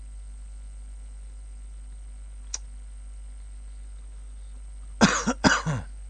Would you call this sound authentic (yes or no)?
yes